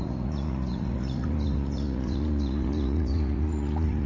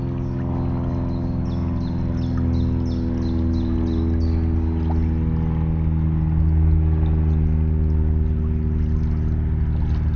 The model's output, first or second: first